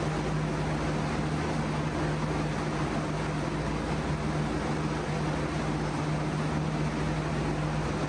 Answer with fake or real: real